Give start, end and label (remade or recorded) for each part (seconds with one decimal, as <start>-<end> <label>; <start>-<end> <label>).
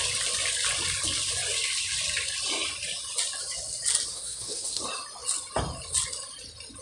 0.0-4.1 recorded; 4.1-4.8 remade; 4.8-6.8 recorded